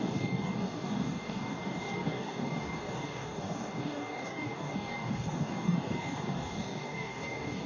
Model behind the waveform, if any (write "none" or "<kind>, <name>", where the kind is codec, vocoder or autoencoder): codec, DAC